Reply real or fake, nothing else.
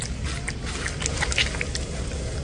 real